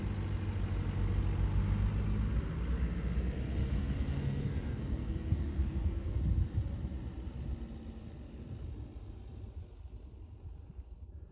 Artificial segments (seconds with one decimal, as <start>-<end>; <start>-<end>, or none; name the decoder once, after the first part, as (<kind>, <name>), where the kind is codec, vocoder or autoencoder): 3.6-6.2 (codec, SNAC)